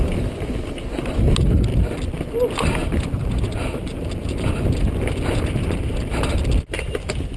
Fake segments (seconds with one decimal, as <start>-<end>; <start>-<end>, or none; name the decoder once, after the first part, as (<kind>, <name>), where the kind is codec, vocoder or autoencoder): none